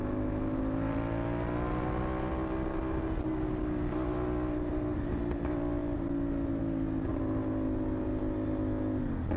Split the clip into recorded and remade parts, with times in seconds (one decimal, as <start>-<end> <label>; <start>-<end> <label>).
0.0-9.4 recorded